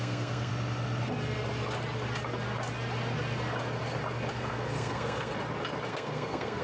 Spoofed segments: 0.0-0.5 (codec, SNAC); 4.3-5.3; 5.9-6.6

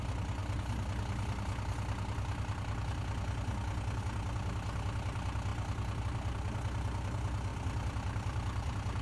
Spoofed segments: 7.5-9.0 (vocoder, BigVGAN v2)

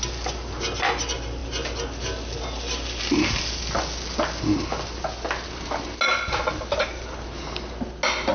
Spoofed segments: none

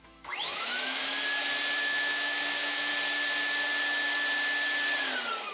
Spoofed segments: 0.0-1.0 (autoencoder, DAC-VAE); 1.8-2.9

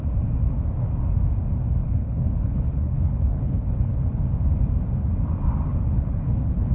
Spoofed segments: 1.8-4.1 (codec, HILCodec); 5.7-6.7

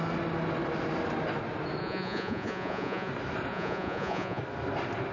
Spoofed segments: 1.8-3.1 (vocoder, Vocos); 3.5-4.4

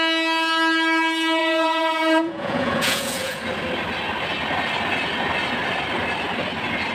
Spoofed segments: 1.4-3.4 (vocoder, Vocos)